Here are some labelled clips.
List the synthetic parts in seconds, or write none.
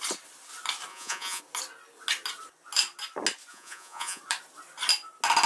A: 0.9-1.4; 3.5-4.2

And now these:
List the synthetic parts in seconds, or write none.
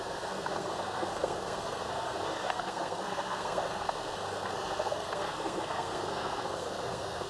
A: 0.0-7.3